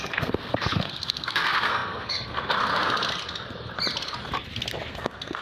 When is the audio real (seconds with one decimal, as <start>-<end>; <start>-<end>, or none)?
2.7-4.9